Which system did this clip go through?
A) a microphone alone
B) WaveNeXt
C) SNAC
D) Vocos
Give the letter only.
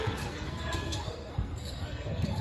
C